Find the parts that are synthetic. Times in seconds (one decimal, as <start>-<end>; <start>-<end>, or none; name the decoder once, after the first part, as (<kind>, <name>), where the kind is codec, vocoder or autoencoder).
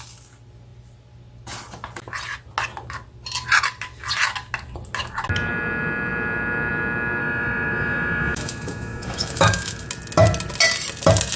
7.2-9.9 (autoencoder, DAC-VAE)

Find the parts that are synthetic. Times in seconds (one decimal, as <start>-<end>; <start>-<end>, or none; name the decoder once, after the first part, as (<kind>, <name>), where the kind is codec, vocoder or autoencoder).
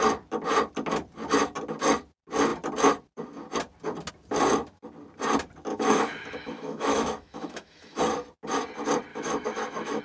5.7-8.0 (autoencoder, DAC-VAE); 9.1-10.0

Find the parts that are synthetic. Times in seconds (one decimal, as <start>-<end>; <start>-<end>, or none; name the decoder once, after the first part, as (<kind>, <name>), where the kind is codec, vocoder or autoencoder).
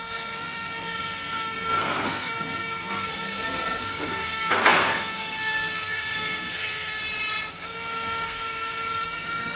0.0-7.0 (codec, SNAC); 7.5-9.6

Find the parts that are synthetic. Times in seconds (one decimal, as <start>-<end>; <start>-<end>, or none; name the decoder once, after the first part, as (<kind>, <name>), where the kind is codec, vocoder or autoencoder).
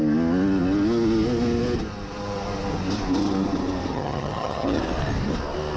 3.9-4.8 (vocoder, HiFi-GAN)